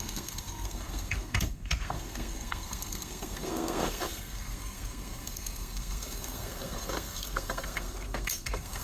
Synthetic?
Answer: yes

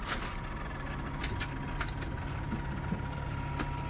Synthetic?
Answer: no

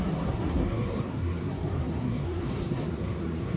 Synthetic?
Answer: yes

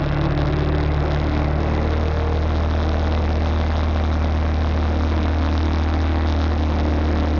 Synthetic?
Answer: no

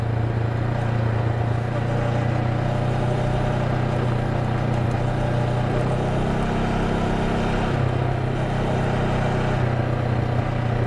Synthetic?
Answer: no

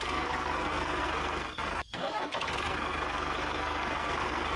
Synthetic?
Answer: yes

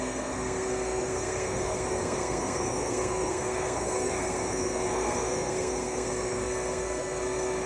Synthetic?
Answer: yes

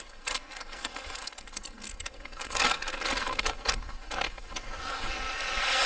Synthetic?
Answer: yes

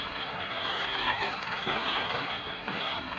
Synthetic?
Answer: yes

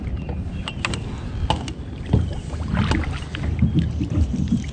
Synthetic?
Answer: no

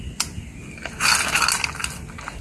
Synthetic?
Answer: no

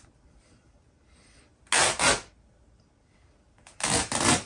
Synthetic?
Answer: no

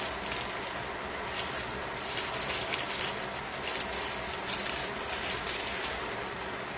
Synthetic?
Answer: no